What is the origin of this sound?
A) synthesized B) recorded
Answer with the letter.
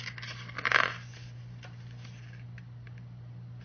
B